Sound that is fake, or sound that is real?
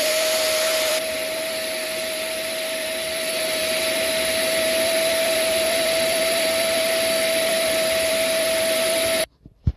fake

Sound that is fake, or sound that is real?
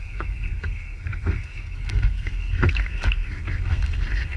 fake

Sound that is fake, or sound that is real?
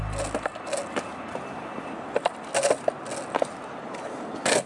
real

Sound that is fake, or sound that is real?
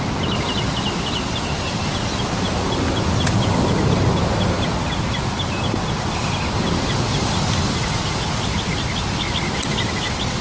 real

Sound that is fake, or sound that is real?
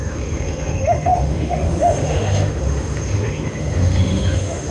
fake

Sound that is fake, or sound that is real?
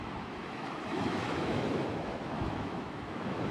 fake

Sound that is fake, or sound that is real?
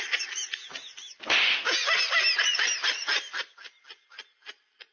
real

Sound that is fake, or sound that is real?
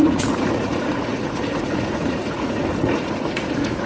fake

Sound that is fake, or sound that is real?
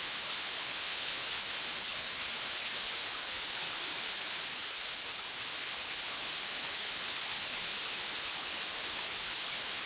fake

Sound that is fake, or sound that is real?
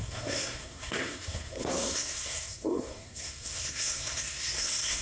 fake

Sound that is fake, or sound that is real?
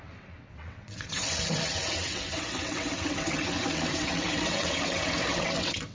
fake